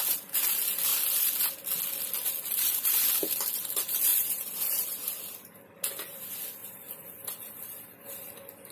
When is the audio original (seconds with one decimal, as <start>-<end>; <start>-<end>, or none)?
0.0-8.7

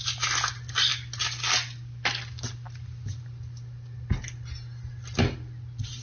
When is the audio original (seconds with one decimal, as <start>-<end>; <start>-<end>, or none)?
0.0-6.0

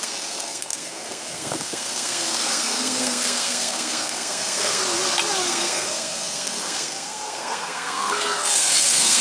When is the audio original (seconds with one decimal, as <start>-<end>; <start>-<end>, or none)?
4.8-5.4

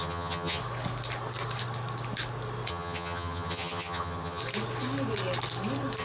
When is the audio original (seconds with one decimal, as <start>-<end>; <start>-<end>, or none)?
0.6-2.7; 4.4-6.0

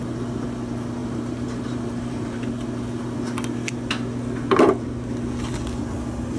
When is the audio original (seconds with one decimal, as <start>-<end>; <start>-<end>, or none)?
0.0-1.0; 2.5-6.4

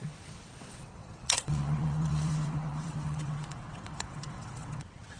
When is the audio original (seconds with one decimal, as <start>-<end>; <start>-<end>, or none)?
none

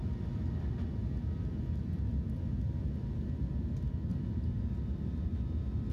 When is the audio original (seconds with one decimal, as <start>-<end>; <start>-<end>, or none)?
0.0-5.9

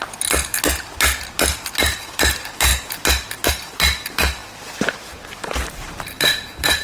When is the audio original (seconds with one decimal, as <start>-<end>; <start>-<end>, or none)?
0.0-1.5; 2.7-3.5